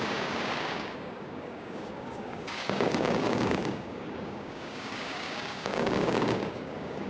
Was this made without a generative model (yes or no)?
no